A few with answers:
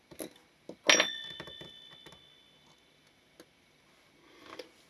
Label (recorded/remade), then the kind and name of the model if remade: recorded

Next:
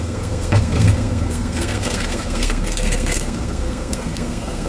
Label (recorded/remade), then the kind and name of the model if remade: remade, codec, SNAC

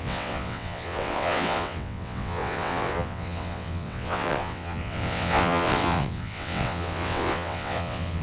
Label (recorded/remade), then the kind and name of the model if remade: remade, vocoder, WaveNeXt